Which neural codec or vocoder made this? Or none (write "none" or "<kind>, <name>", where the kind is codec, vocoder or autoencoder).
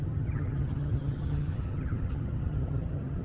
vocoder, HiFi-GAN